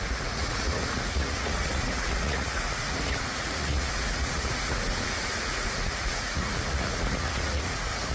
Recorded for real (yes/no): no